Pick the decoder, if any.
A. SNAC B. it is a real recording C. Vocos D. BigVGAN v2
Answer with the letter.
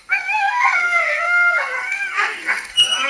A